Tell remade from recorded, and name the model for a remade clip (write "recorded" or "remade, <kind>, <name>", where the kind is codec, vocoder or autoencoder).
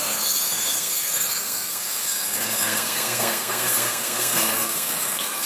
remade, codec, SNAC